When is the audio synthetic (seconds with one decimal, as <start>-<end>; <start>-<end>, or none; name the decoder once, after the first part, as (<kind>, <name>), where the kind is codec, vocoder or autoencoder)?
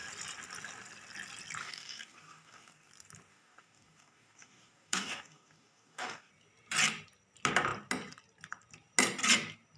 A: 1.6-2.9 (codec, DAC); 3.3-6.3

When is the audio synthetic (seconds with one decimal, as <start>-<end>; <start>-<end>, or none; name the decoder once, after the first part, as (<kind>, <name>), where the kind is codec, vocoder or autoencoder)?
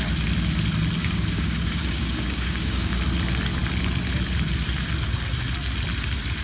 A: 1.0-3.0 (codec, DAC)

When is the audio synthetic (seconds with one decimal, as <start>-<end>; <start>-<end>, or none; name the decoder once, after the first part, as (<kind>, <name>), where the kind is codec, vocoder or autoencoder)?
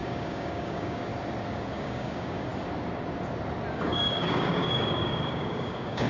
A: 0.0-1.1 (codec, DAC); 1.7-2.5; 3.7-6.1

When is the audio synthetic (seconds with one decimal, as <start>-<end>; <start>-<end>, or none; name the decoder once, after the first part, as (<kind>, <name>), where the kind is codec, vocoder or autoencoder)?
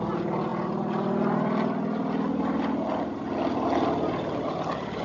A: none